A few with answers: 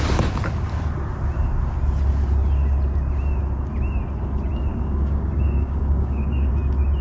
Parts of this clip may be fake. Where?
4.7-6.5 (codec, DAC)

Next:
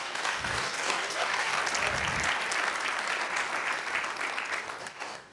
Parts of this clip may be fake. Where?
0.0-1.6 (codec, DAC); 4.8-5.3

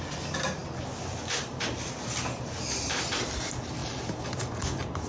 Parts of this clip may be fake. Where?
none

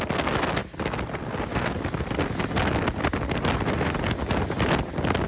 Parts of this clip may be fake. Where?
none

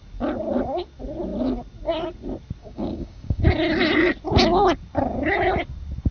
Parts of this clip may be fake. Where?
2.6-3.4 (codec, DAC)